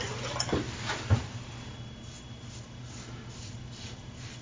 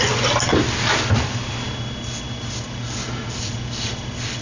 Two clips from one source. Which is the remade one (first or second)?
first